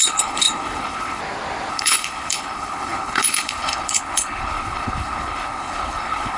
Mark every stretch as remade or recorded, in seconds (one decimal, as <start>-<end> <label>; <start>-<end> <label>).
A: 0.0-1.2 remade; 1.2-1.7 recorded; 1.7-6.4 remade

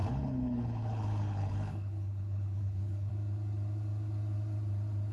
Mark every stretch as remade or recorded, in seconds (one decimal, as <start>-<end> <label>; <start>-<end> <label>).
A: 0.0-3.1 remade; 3.1-5.1 recorded

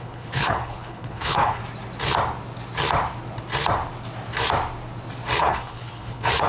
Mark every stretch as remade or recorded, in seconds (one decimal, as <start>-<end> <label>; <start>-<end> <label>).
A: 0.0-1.6 remade; 1.6-5.4 recorded; 5.4-6.5 remade

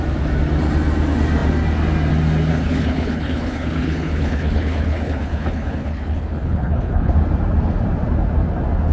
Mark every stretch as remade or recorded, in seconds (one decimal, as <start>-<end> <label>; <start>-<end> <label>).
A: 0.0-2.5 recorded; 2.5-7.1 remade; 7.1-8.9 recorded

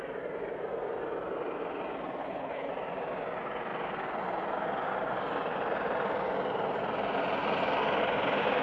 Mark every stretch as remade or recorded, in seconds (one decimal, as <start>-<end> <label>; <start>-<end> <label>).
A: 0.0-2.2 recorded; 2.2-2.7 remade; 2.7-8.6 recorded